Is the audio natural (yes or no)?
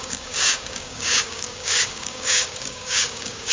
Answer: no